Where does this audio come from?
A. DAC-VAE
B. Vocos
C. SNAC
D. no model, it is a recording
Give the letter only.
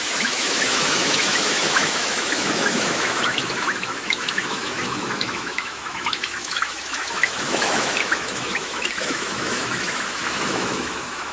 A